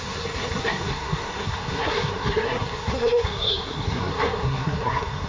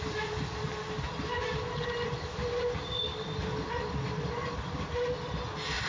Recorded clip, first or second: second